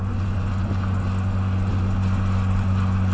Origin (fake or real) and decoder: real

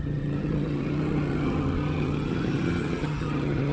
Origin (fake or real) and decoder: fake, vocoder, HiFi-GAN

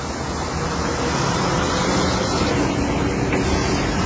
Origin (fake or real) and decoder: real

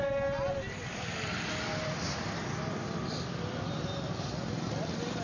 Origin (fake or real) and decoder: real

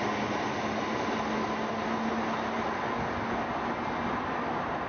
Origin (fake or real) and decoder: real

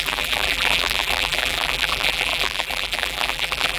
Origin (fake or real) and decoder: fake, vocoder, BigVGAN v2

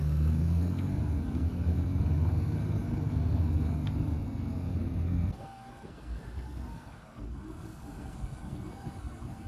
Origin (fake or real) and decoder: fake, codec, SNAC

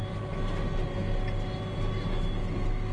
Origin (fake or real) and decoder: real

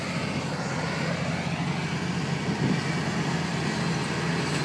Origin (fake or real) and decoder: real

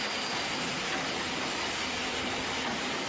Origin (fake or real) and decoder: real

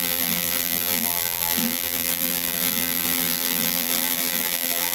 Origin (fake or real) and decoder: fake, vocoder, BigVGAN v2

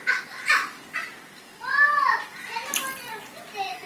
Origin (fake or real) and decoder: real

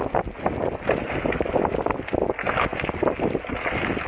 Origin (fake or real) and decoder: real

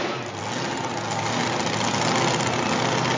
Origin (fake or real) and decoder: real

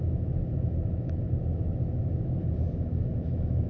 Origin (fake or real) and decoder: fake, autoencoder, DAC-VAE